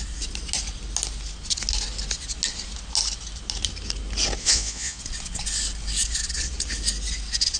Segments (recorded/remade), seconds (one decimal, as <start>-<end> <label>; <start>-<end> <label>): 0.0-4.4 recorded; 4.4-5.0 remade; 5.0-7.6 recorded